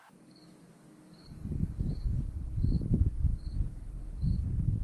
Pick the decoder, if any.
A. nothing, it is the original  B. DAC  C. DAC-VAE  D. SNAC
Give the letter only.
B